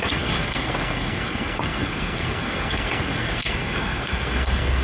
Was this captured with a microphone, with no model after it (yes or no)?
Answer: no